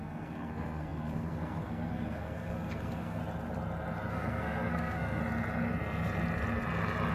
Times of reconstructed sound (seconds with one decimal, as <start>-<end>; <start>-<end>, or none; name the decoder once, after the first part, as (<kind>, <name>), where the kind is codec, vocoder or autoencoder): 0.0-3.2 (codec, SNAC); 4.1-5.2